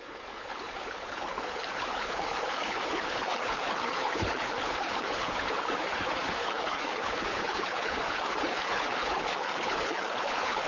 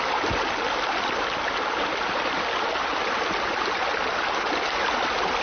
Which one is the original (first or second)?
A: second